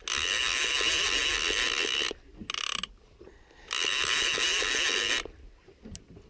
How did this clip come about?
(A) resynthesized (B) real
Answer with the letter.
B